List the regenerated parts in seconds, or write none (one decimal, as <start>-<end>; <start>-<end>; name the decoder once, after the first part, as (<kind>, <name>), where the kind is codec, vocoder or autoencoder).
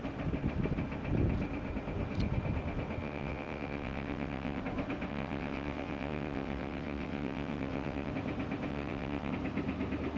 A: 3.0-4.6 (vocoder, WaveNeXt); 5.1-8.1; 8.7-9.3